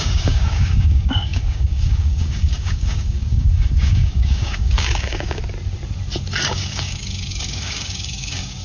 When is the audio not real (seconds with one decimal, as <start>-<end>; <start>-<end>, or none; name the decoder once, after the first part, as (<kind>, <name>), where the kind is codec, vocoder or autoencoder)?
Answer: 0.0-5.4 (codec, DAC); 6.5-8.6